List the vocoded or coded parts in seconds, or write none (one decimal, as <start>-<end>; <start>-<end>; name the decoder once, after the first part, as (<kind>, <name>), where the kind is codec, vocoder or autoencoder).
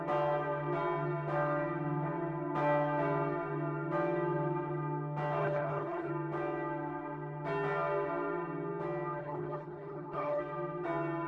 5.4-6.1 (codec, HILCodec); 9.2-10.4